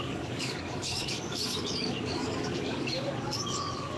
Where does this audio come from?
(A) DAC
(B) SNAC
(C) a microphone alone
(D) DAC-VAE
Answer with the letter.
A